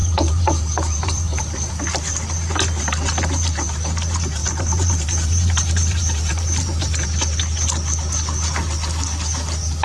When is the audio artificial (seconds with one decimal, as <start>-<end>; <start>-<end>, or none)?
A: 0.0-1.7; 4.4-7.4